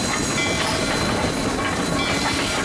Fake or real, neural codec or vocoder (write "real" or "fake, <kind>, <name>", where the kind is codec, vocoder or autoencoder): real